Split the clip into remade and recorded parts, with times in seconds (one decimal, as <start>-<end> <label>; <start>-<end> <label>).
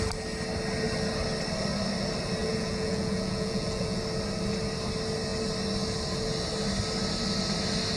0.0-2.4 recorded; 2.4-4.0 remade; 4.0-8.0 recorded